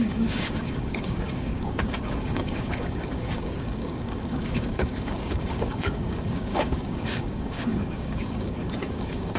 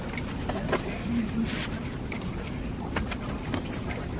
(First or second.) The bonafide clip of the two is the second